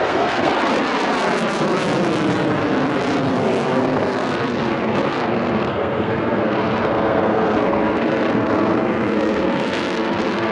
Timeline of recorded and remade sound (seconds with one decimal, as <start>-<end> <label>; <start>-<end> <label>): 0.0-0.5 remade; 0.5-3.3 recorded; 3.3-10.5 remade